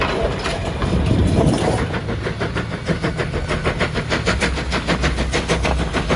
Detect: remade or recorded remade